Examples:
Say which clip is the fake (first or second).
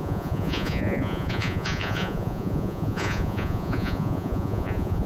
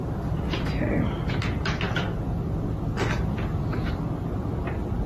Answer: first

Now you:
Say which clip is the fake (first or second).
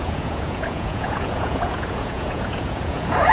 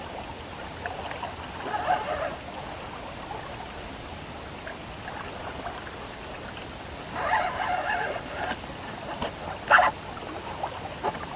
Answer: first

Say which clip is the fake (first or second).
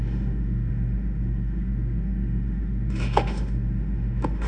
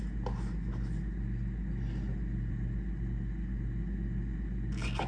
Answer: first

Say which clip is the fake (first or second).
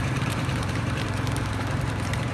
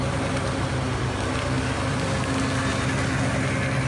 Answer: first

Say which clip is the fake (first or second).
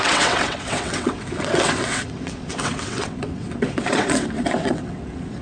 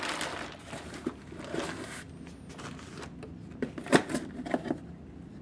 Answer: first